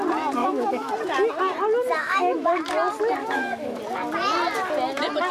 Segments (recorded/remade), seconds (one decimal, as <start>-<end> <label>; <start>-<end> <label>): 0.0-0.4 recorded; 0.4-0.9 remade; 0.9-2.0 recorded; 2.0-2.6 remade; 2.6-3.2 recorded; 3.2-3.8 remade; 3.8-5.3 recorded